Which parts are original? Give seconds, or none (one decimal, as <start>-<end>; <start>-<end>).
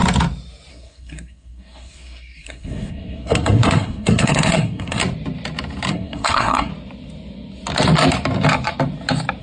0.0-0.7; 5.0-5.9; 6.7-9.4